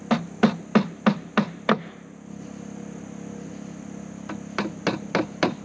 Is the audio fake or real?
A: real